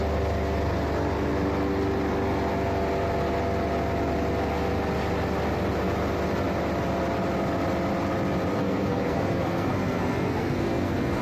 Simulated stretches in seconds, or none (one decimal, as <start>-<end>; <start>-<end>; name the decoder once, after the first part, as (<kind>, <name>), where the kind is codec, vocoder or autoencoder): 8.6-11.2 (codec, SNAC)